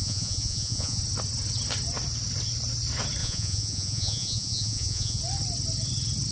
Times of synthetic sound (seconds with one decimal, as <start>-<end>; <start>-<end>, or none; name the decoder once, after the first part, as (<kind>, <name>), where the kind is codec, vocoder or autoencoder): 0.0-1.0 (vocoder, Vocos); 3.2-5.2